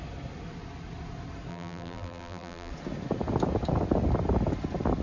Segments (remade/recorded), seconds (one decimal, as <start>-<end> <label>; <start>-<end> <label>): 0.0-1.5 recorded; 1.5-2.7 remade; 2.7-5.0 recorded